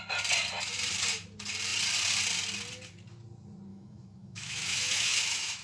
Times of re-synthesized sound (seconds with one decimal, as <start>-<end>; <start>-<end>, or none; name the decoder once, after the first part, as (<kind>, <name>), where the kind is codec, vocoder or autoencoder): 3.7-5.6 (autoencoder, DAC-VAE)